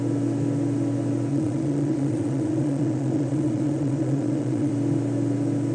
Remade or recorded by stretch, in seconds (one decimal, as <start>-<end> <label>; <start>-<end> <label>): 0.0-1.3 recorded; 1.3-4.7 remade; 4.7-5.7 recorded